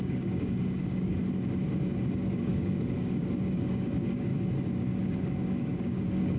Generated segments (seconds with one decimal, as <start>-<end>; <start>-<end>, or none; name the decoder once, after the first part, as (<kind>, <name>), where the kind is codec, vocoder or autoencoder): 0.0-1.2 (codec, DAC); 2.1-4.3; 4.8-6.4